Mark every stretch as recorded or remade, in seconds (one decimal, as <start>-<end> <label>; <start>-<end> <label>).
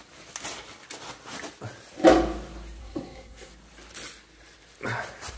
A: 0.0-2.8 recorded; 2.8-3.5 remade; 3.5-5.4 recorded